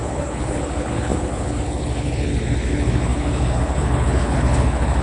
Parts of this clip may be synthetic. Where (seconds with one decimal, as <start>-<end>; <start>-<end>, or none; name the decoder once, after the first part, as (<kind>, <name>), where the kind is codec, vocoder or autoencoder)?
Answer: 0.0-5.0 (codec, HILCodec)